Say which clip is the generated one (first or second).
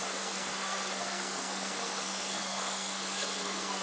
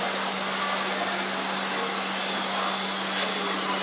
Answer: first